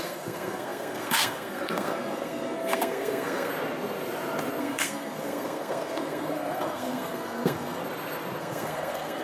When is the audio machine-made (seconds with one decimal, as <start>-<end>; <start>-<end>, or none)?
0.0-3.5; 4.6-7.8; 8.4-9.2